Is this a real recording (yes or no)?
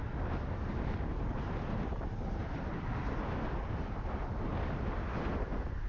yes